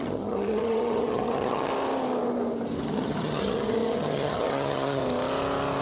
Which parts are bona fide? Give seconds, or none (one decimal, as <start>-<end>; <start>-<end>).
1.7-2.8; 5.0-5.8